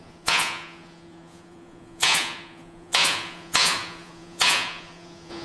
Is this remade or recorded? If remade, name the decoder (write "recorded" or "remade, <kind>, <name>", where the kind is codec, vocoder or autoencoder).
remade, vocoder, Vocos